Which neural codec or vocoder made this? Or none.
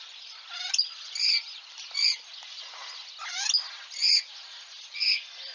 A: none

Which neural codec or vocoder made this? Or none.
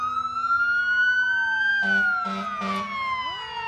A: none